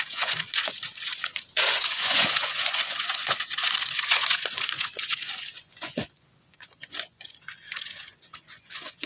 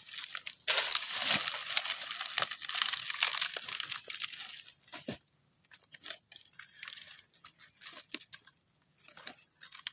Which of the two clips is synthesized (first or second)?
first